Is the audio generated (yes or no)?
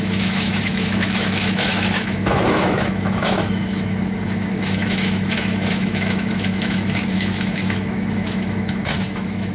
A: yes